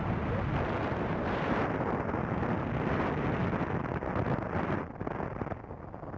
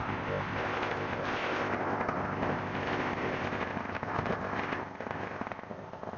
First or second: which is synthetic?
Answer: second